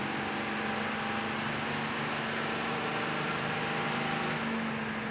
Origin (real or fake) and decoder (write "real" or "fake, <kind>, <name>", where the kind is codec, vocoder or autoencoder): real